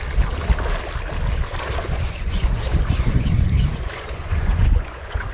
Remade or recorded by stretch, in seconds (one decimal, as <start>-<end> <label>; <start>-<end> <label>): 0.0-1.8 recorded; 1.8-5.3 remade